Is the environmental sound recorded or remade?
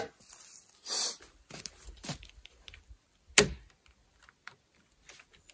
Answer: recorded